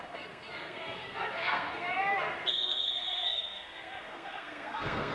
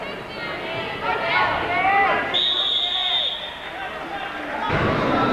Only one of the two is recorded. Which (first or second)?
second